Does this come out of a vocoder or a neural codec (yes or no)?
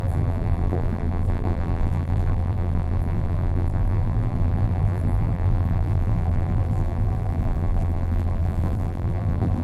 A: yes